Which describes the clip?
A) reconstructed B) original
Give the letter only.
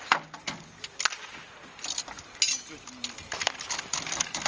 B